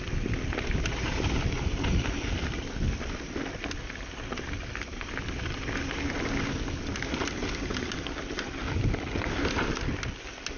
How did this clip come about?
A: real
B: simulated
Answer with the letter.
A